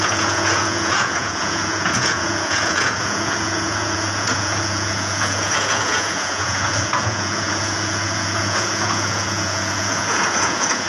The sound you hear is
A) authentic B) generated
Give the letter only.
B